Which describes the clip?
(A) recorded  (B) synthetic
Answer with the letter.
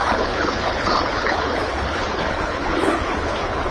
B